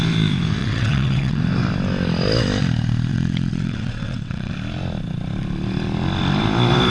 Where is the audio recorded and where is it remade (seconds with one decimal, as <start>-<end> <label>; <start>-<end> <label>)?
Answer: 0.0-0.6 recorded; 0.6-1.4 remade; 1.4-3.1 recorded; 3.1-4.5 remade; 4.5-6.9 recorded